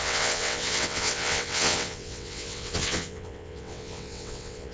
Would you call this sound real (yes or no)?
no